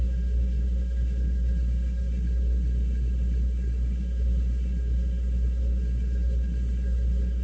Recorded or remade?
remade